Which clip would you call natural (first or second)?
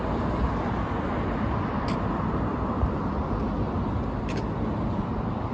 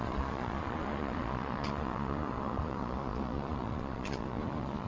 first